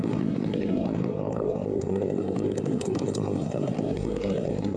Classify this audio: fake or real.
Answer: fake